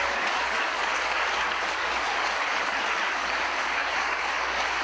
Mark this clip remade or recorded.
remade